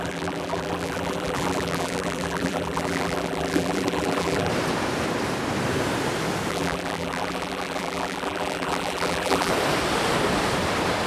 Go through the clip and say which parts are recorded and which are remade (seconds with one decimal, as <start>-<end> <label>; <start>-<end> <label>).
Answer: 0.0-4.5 remade; 4.5-6.5 recorded; 6.5-9.5 remade; 9.5-11.1 recorded